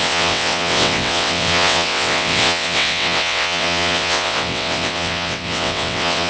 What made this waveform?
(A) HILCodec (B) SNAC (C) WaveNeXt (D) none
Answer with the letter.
C